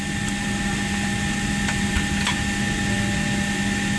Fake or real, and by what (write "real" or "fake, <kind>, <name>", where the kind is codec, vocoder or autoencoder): real